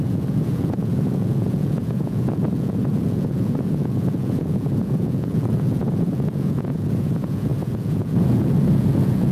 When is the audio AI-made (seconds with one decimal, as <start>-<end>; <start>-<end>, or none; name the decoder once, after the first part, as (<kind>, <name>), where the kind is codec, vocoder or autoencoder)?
0.0-9.3 (vocoder, Vocos)